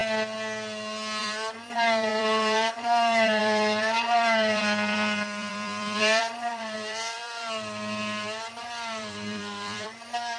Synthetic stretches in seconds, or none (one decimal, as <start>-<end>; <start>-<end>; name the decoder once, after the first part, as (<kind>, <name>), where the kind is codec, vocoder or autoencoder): 1.2-10.4 (vocoder, BigVGAN v2)